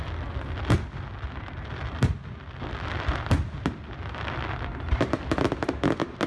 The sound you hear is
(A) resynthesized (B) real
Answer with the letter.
B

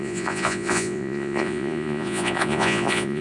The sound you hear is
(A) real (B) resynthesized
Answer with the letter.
B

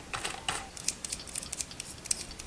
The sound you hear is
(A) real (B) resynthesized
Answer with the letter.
A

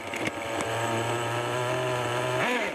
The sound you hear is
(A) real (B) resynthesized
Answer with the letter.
A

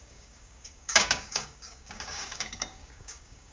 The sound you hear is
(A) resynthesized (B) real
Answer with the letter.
A